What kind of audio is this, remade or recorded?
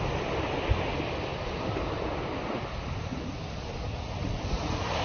recorded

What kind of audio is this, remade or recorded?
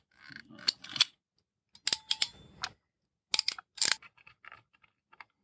recorded